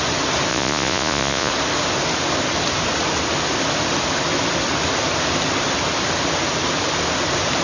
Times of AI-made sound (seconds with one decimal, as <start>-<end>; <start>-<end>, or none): 0.5-1.5